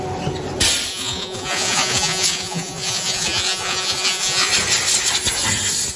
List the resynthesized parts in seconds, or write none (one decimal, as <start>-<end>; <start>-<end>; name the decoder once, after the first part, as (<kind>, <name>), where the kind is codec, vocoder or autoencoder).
0.9-4.5 (vocoder, Vocos)